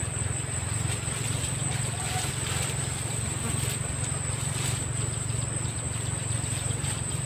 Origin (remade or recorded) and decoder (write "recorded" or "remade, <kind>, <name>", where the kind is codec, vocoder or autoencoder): recorded